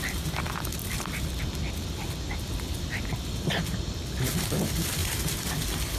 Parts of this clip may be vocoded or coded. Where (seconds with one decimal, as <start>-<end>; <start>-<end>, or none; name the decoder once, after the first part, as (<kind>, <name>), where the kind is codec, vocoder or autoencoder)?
5.0-5.5 (vocoder, BigVGAN v2)